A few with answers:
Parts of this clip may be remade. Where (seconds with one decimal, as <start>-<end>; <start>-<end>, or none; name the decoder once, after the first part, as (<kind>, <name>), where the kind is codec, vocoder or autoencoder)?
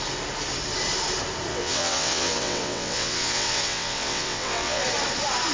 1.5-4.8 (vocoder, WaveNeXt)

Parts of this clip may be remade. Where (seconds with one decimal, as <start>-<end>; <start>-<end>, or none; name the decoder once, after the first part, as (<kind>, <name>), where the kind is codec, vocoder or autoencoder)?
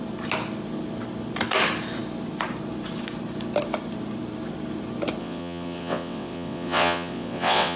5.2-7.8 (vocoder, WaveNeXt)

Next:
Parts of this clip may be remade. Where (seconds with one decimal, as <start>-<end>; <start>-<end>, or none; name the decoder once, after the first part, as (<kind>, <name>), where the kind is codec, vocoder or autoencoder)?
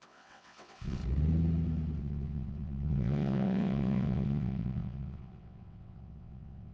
0.0-1.0 (vocoder, WaveNeXt); 2.0-6.7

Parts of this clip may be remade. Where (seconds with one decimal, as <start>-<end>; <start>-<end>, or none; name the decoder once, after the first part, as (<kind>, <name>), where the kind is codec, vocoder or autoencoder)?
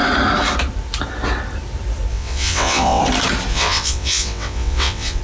2.1-3.0 (vocoder, WaveNeXt); 3.5-5.2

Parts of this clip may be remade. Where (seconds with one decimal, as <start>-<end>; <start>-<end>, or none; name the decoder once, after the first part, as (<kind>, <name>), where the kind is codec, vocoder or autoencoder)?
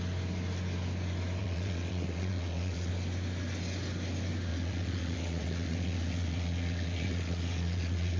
1.4-2.9 (vocoder, WaveNeXt); 4.5-8.2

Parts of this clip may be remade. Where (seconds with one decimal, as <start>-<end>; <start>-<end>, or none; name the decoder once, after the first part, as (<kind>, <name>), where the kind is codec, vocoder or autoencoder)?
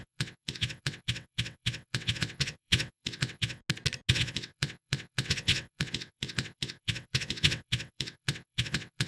0.0-3.6 (vocoder, WaveNeXt); 4.1-9.1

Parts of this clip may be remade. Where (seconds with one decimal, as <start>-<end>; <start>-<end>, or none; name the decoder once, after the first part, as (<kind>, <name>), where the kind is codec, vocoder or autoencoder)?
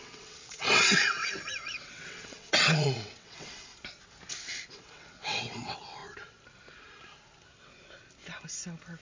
0.0-1.2 (vocoder, WaveNeXt); 1.7-3.7; 4.4-6.0